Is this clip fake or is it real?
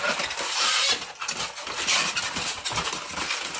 real